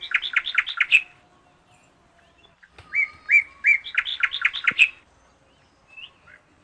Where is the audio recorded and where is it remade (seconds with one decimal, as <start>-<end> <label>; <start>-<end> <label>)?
0.0-6.6 recorded